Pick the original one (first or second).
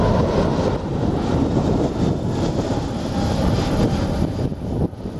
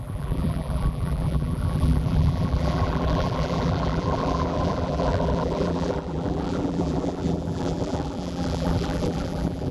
first